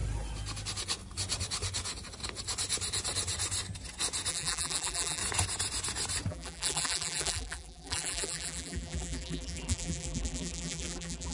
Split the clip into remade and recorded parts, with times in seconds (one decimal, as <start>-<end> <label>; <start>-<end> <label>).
0.0-4.3 recorded; 4.3-5.2 remade; 5.2-6.3 recorded; 6.3-11.3 remade